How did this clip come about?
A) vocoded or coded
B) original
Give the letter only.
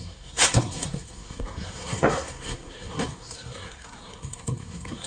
A